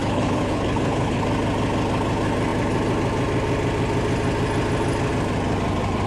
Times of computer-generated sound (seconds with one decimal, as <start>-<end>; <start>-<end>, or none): 0.0-1.2